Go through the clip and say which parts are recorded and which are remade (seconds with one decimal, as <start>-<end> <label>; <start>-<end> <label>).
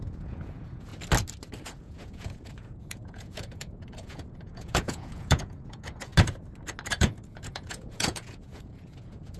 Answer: 0.0-0.9 remade; 0.9-1.7 recorded; 1.7-6.1 remade; 6.1-7.0 recorded; 7.0-9.4 remade